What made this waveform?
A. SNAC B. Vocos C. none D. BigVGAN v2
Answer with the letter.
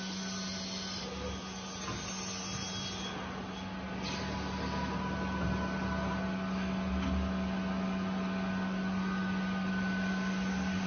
C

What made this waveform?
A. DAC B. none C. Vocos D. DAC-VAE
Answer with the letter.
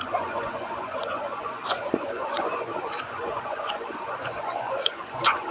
C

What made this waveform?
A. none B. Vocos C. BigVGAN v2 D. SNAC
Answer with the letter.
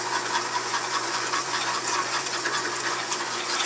B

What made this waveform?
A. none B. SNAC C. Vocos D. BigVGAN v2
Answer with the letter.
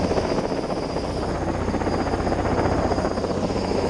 A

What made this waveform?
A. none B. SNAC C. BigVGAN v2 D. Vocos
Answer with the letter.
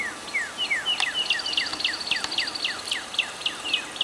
A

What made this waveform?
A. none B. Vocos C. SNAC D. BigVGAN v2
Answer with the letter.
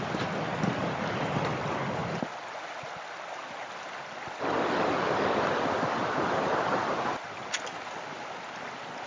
A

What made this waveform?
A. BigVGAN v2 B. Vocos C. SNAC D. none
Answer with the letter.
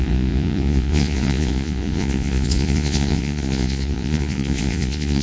B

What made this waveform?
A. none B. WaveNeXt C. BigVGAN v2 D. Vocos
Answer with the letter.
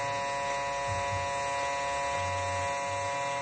A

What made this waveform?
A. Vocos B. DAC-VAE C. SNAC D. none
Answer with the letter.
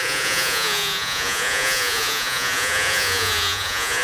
A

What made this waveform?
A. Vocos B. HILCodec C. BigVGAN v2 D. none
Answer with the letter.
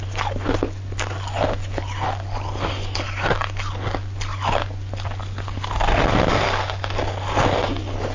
D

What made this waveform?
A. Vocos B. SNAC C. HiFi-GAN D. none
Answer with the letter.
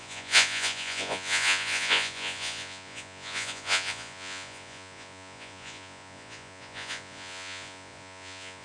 A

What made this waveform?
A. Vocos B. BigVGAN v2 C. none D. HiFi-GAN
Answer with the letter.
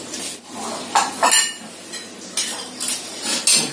C